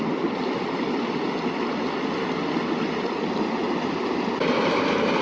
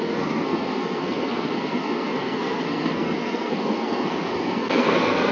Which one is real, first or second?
first